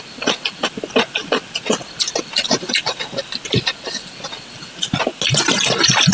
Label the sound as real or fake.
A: real